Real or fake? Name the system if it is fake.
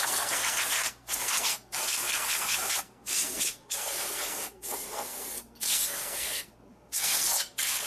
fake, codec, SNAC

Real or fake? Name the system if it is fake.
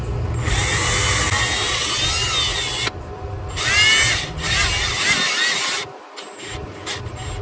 real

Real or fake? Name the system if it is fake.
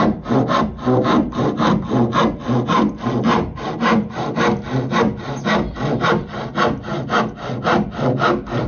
real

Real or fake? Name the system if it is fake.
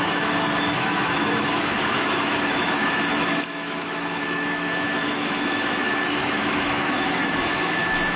fake, autoencoder, DAC-VAE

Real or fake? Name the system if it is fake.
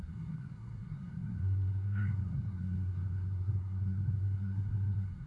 fake, codec, SNAC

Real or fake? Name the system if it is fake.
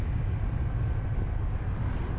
real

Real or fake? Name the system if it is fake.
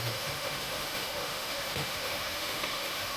fake, autoencoder, DAC-VAE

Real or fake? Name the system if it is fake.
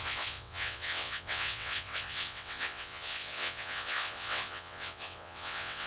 fake, vocoder, WaveNeXt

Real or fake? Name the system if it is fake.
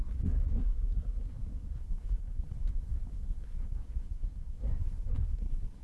fake, codec, SNAC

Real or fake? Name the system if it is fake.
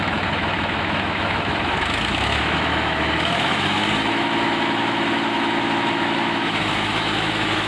fake, autoencoder, DAC-VAE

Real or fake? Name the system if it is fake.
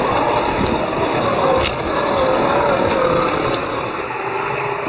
real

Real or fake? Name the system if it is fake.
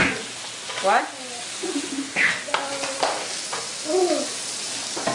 real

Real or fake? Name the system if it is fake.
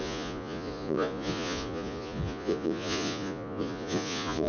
fake, vocoder, Vocos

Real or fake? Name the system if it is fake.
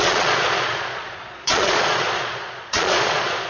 fake, vocoder, Vocos